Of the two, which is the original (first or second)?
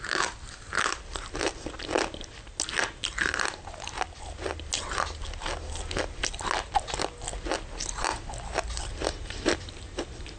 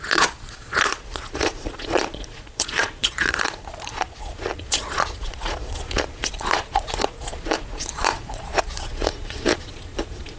first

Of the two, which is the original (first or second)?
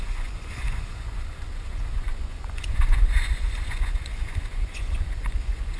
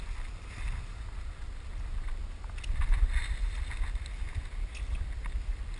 second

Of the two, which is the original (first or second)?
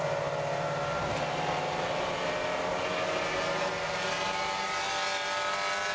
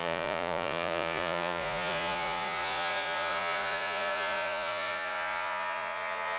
first